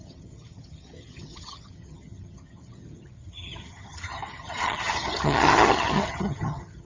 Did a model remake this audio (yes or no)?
yes